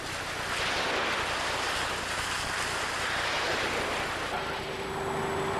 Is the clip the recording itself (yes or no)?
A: yes